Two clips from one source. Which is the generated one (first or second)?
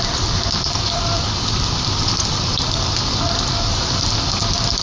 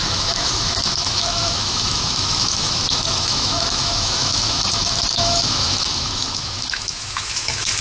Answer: second